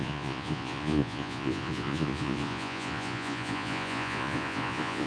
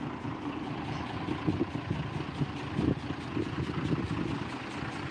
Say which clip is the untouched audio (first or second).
second